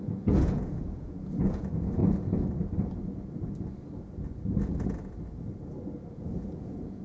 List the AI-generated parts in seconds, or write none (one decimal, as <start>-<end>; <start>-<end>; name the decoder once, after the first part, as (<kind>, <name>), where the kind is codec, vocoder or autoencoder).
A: 0.0-2.0 (vocoder, Vocos); 6.1-7.0

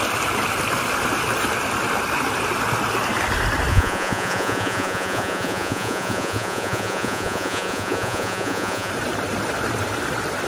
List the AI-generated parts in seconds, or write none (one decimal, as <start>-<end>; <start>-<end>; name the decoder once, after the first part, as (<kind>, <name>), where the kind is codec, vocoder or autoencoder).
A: 3.7-8.9 (vocoder, Vocos)

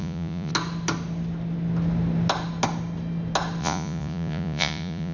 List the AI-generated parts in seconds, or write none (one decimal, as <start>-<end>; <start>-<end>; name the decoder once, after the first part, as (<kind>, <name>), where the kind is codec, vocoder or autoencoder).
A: 0.0-0.5 (vocoder, Vocos); 3.6-5.1

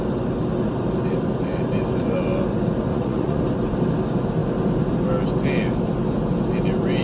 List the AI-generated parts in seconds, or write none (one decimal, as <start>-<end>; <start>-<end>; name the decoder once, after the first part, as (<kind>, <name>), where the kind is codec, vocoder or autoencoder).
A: 2.9-3.4 (vocoder, Vocos)

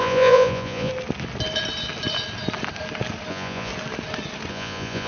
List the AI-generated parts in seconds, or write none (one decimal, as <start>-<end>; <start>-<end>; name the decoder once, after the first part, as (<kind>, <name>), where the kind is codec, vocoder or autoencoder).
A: 0.0-0.9 (vocoder, Vocos); 3.3-3.7; 4.5-5.1

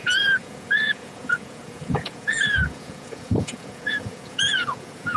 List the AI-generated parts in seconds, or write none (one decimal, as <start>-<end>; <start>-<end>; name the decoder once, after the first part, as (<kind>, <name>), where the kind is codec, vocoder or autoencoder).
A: 0.0-5.2 (vocoder, Vocos)